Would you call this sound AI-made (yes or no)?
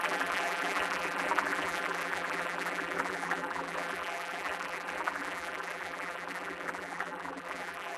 yes